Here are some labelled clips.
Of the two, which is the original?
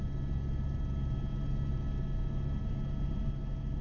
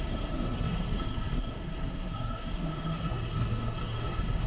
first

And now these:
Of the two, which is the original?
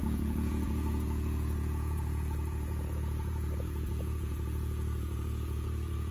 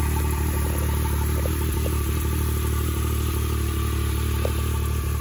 second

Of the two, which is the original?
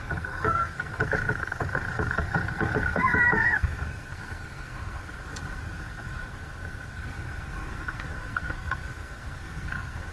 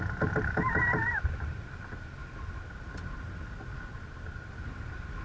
second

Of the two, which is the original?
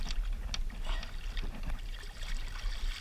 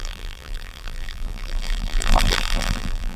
first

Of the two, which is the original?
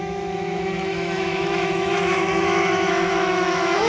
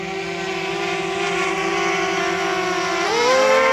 second